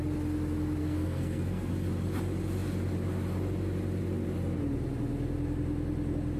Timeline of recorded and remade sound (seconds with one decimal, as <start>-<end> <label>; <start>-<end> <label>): 0.0-0.8 recorded; 0.8-1.7 remade; 1.7-6.4 recorded